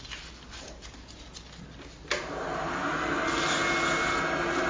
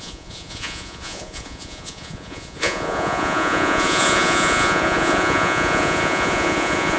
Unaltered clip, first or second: first